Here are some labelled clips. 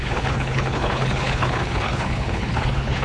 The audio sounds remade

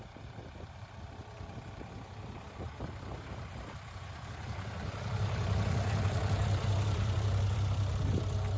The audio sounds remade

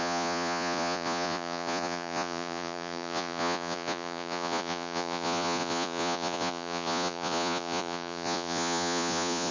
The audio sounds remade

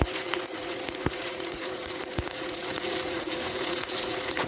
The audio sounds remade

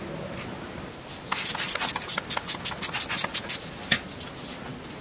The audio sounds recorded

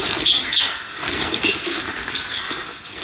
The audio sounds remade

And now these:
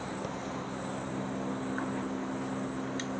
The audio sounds recorded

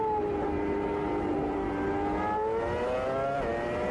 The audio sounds recorded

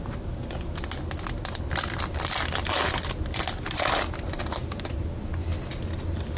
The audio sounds recorded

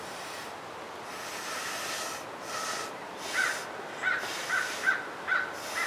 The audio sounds recorded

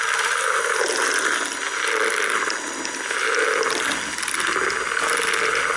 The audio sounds recorded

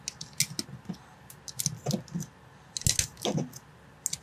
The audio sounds recorded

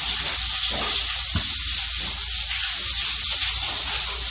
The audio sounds recorded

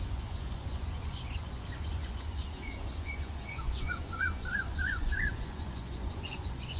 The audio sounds remade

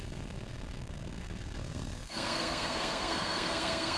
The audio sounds remade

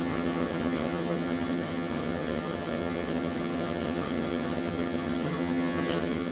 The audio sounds remade